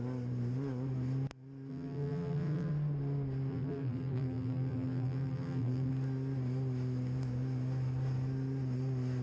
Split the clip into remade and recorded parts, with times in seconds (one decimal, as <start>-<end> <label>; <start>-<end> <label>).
0.0-1.7 recorded; 1.7-2.7 remade; 2.7-3.5 recorded; 3.5-5.9 remade; 5.9-9.2 recorded